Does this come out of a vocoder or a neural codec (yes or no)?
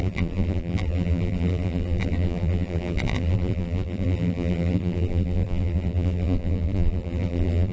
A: yes